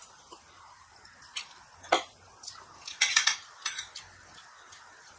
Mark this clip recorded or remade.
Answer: recorded